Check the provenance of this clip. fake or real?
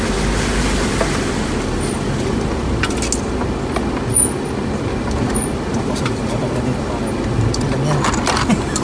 real